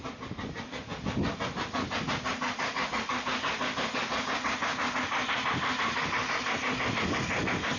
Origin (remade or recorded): recorded